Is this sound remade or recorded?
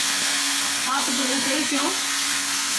remade